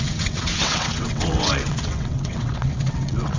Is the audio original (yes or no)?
no